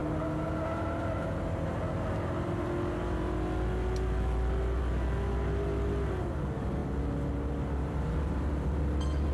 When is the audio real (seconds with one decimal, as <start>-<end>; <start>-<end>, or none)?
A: 0.0-9.3